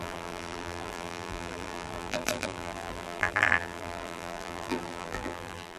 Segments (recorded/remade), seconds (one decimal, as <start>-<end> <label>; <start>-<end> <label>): 0.0-5.8 remade